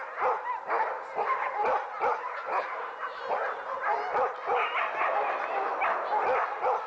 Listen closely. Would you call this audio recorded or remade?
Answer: recorded